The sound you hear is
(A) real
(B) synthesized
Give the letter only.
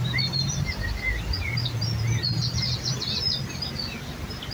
A